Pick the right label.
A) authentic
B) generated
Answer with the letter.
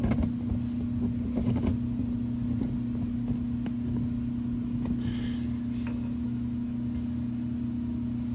A